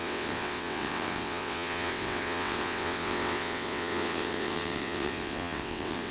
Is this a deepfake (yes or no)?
yes